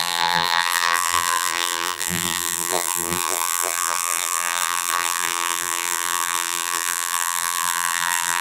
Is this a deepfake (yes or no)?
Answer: yes